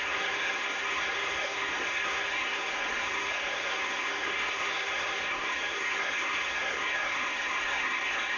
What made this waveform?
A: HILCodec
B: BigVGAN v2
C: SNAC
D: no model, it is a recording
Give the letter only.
C